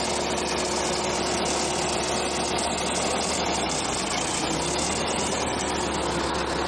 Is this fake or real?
real